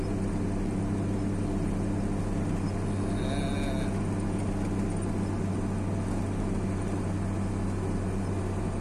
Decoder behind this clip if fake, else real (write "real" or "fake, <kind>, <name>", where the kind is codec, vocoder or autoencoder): real